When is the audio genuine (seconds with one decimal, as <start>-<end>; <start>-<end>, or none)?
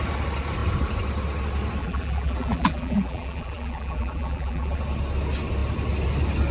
0.0-1.8; 4.8-6.5